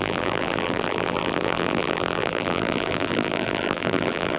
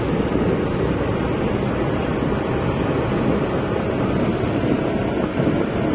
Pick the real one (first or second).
second